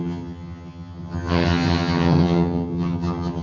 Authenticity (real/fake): fake